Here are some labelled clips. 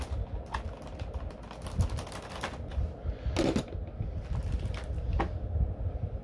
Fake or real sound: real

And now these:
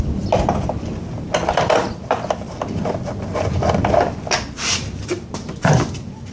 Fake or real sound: real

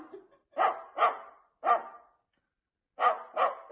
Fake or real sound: real